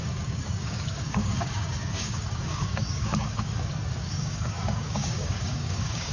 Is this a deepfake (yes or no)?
yes